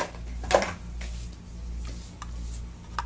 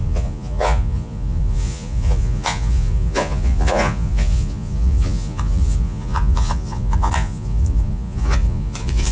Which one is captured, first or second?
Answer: first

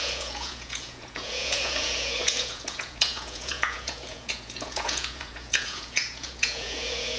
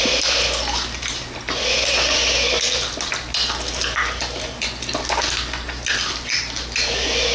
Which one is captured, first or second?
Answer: second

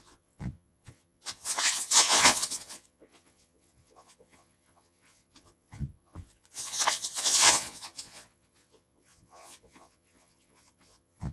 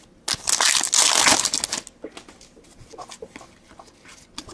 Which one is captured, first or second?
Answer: second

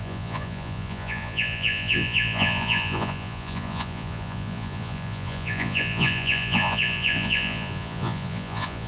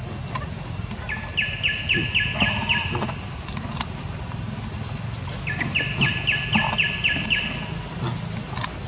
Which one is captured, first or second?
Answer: second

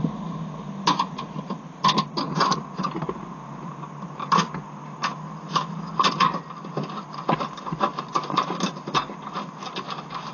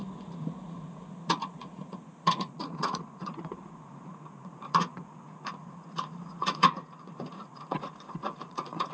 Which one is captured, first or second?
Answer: first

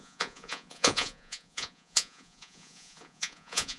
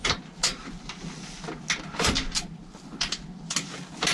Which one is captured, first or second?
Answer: second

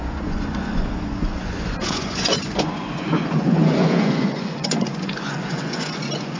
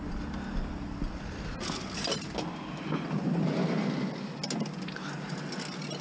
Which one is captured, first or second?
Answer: second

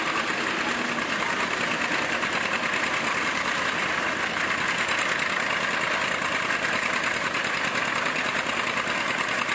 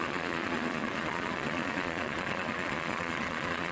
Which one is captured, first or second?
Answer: first